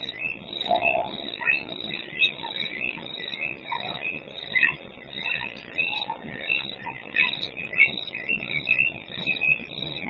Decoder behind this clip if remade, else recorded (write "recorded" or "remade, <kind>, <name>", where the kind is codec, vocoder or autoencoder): remade, vocoder, Vocos